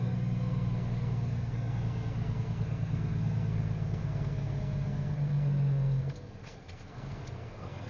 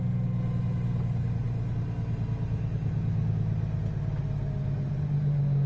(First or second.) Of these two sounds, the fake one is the first